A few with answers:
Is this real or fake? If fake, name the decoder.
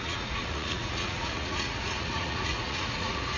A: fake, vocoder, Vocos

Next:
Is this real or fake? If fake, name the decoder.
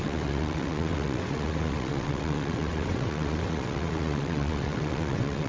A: fake, vocoder, WaveNeXt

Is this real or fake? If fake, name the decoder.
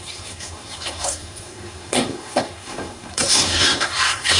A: fake, codec, SNAC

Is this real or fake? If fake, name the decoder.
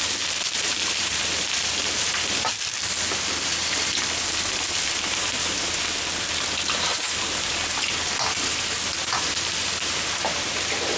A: fake, vocoder, BigVGAN v2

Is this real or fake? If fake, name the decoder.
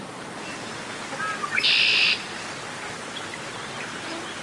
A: real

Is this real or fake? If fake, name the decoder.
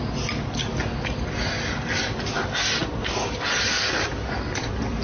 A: real